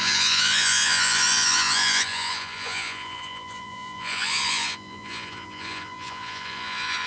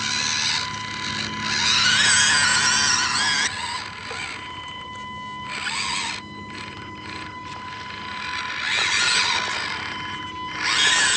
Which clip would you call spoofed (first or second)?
first